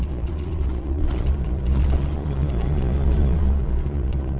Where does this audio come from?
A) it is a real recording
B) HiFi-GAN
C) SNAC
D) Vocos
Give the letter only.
D